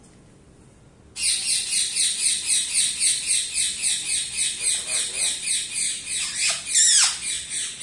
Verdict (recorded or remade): recorded